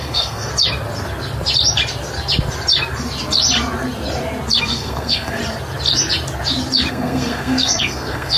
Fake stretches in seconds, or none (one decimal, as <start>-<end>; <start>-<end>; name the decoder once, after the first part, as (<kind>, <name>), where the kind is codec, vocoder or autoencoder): 0.0-0.5 (codec, SNAC); 4.6-5.4; 6.9-8.4